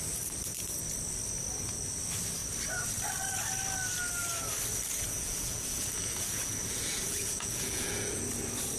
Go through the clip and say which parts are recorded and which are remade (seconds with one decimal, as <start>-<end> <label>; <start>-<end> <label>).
0.0-4.9 recorded; 4.9-8.2 remade; 8.2-8.8 recorded